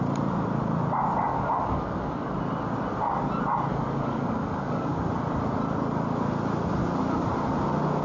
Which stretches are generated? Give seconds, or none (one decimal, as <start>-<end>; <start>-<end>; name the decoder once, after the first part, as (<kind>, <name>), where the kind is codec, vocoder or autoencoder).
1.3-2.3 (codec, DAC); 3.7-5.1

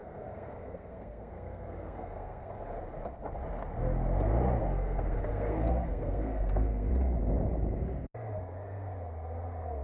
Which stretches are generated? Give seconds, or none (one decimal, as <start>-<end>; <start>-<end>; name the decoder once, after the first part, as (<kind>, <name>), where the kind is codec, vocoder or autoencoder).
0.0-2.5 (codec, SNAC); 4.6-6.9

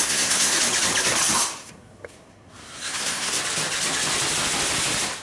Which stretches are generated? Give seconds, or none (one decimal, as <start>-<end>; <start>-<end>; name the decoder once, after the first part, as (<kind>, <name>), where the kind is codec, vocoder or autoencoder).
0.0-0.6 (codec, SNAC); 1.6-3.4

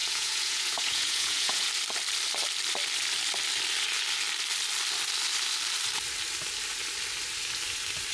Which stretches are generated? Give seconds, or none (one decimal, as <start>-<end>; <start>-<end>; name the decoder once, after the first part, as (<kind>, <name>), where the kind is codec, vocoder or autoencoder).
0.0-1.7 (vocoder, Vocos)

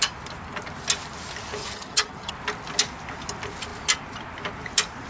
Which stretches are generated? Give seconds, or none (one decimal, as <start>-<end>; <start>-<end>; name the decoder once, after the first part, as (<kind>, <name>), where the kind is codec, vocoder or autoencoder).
1.6-2.3 (vocoder, HiFi-GAN)

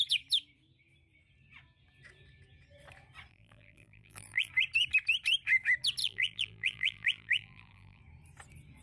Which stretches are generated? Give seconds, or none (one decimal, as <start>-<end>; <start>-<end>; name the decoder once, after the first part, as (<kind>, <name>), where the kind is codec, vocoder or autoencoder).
3.3-4.5 (vocoder, BigVGAN v2); 6.0-8.0

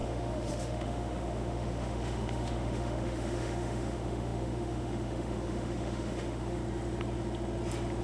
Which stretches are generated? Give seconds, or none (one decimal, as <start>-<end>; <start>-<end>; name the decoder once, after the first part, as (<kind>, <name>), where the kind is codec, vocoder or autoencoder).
0.0-6.6 (autoencoder, DAC-VAE)

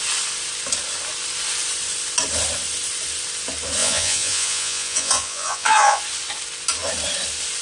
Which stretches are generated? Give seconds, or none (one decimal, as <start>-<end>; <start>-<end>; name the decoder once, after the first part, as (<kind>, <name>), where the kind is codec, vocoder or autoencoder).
3.8-6.0 (vocoder, Vocos)